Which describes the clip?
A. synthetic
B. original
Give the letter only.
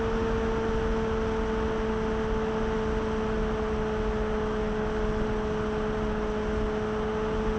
B